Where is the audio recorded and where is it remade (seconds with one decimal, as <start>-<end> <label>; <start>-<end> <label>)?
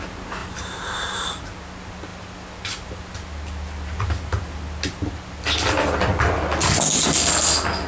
0.0-0.4 recorded; 0.4-1.4 remade; 1.4-7.9 recorded